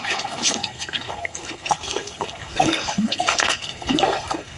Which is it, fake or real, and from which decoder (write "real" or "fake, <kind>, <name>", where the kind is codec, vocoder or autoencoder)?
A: fake, codec, SNAC